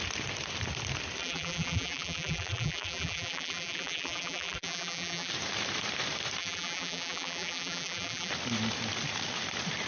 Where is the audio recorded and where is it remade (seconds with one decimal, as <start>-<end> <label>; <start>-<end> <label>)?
0.0-1.2 recorded; 1.2-5.3 remade; 5.3-6.4 recorded; 6.4-8.3 remade; 8.3-9.9 recorded